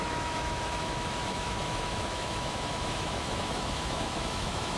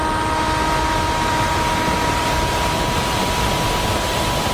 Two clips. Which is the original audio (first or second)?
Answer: second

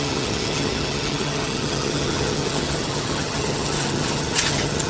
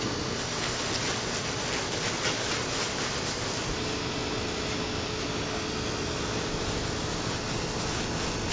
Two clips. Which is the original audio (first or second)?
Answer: second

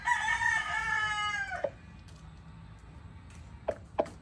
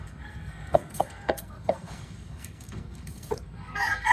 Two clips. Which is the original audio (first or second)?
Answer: first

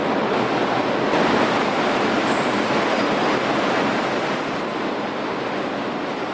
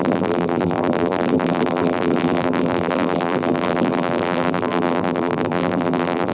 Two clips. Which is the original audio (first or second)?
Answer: first